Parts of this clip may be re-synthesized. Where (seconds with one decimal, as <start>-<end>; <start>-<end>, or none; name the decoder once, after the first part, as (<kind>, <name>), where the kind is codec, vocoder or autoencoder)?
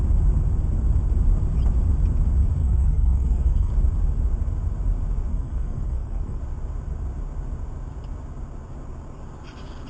2.6-3.7 (codec, SNAC); 5.3-6.4